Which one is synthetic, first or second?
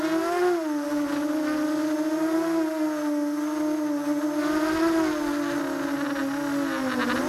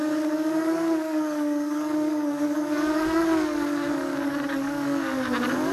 second